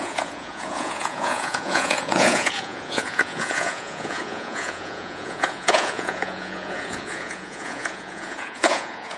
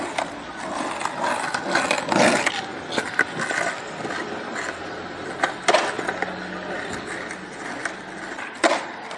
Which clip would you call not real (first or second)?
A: first